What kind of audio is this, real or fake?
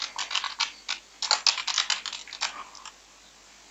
real